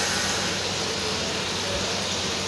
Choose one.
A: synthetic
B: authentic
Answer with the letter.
B